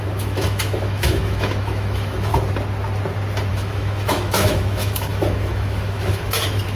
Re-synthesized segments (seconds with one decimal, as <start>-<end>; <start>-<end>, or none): 0.0-2.3; 3.5-6.8